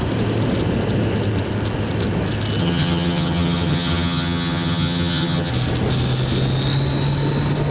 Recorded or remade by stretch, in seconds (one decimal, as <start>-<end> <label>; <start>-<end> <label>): 0.0-2.6 recorded; 2.6-5.5 remade; 5.5-7.7 recorded